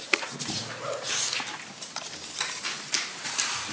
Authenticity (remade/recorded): recorded